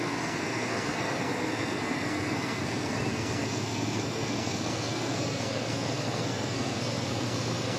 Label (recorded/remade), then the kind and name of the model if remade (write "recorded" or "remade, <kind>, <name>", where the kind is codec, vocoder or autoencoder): remade, codec, SNAC